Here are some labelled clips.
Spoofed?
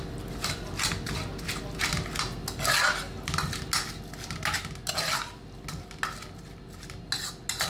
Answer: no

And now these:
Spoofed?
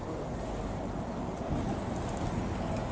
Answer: no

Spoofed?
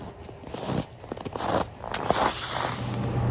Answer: no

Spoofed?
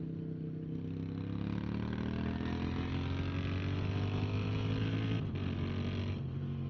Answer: no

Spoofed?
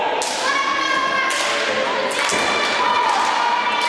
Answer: no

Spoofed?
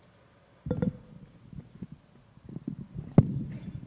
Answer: no